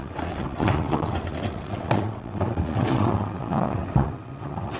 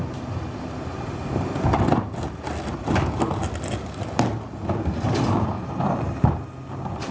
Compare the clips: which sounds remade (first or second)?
first